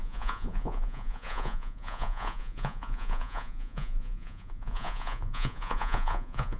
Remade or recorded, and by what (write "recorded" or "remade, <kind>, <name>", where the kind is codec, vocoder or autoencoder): remade, vocoder, Vocos